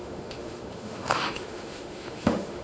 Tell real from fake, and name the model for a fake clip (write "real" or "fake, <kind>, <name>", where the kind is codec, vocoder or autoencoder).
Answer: fake, autoencoder, DAC-VAE